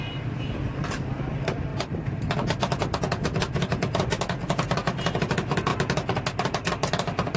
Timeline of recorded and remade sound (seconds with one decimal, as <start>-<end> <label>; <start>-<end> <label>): 0.0-7.4 remade

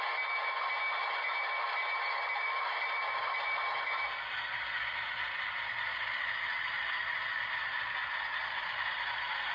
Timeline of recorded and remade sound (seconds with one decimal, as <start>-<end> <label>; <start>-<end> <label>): 0.0-1.0 recorded; 1.0-6.2 remade; 6.2-9.5 recorded

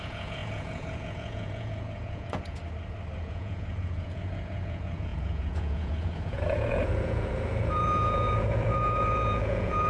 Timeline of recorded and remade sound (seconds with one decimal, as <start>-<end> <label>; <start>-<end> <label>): 0.0-2.6 remade; 2.6-3.2 recorded; 3.2-9.9 remade

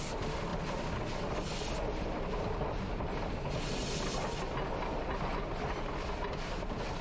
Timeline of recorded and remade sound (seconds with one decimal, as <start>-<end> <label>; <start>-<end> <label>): 0.0-7.0 recorded